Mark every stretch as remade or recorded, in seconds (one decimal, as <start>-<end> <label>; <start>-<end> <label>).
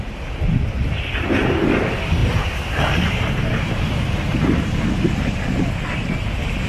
0.0-2.2 recorded; 2.2-4.9 remade; 4.9-6.7 recorded